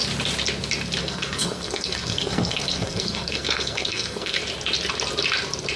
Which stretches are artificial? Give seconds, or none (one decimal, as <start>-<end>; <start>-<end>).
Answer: 1.0-4.4